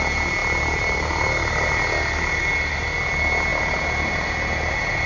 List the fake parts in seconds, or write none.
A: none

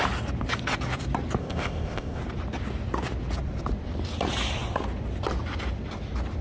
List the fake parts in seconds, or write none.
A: 1.4-2.2 (codec, ZipCodec)

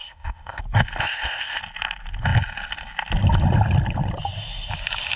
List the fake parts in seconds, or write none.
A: 0.0-0.6 (codec, ZipCodec); 1.0-1.6

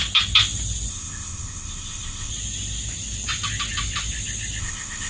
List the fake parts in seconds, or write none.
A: 0.9-2.3 (codec, ZipCodec); 4.6-5.1

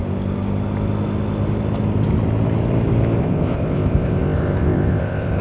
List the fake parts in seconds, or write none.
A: 3.2-5.4 (codec, ZipCodec)